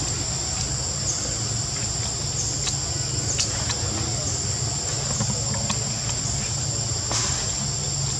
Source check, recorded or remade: recorded